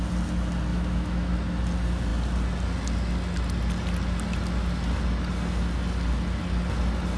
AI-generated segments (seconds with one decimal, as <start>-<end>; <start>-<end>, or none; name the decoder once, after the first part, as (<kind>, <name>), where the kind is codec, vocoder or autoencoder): 0.7-1.3 (autoencoder, DAC-VAE)